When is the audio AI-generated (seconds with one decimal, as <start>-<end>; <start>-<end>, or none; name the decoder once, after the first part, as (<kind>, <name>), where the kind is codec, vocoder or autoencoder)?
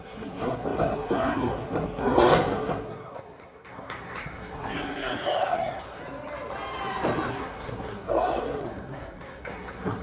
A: 0.0-6.0 (codec, SNAC); 7.3-10.0